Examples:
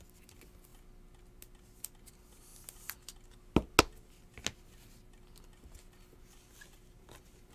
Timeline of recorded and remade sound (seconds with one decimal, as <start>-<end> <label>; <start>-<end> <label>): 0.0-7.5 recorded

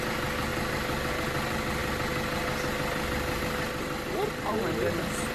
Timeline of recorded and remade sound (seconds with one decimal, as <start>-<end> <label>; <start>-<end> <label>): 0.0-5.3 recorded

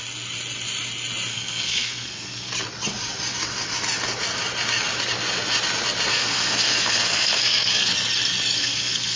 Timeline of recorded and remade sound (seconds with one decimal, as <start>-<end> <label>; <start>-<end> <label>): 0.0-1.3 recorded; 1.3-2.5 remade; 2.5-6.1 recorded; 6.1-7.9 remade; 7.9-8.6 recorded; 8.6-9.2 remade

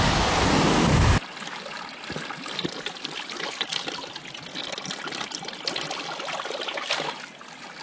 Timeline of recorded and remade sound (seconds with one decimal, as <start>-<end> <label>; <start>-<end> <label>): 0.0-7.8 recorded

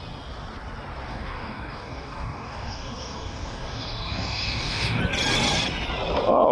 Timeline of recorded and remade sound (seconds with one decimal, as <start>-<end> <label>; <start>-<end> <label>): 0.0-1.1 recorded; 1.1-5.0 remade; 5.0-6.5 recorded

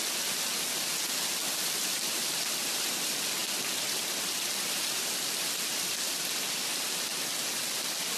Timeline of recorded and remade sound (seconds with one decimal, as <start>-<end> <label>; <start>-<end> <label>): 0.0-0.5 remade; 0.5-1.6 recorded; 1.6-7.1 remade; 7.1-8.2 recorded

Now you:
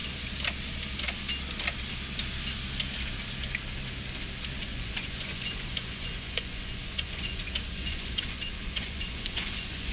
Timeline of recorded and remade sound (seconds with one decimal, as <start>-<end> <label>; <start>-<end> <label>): 0.0-4.6 recorded; 4.6-9.9 remade

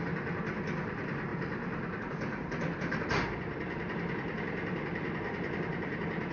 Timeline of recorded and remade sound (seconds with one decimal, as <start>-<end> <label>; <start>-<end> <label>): 0.0-6.3 recorded